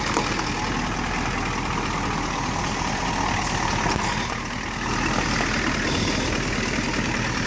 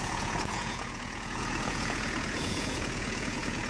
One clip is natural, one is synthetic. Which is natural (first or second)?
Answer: first